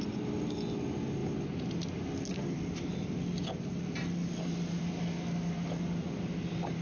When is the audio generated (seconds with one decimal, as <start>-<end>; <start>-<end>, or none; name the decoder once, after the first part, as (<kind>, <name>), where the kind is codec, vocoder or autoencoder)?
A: none